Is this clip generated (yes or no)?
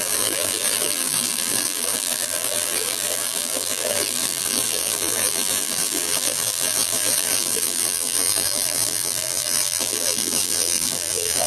yes